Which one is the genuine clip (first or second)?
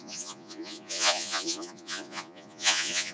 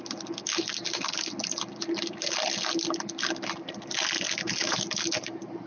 second